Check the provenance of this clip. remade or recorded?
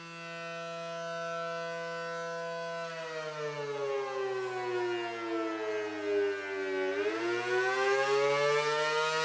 recorded